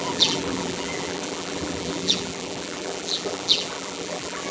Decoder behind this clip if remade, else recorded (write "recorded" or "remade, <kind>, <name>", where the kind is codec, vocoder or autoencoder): remade, vocoder, BigVGAN v2